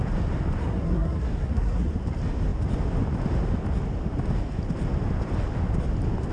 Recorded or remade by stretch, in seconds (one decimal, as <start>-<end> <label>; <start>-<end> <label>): 0.0-0.6 recorded; 0.6-1.9 remade; 1.9-6.3 recorded